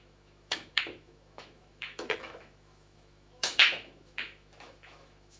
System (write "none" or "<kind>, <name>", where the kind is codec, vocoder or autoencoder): autoencoder, DAC-VAE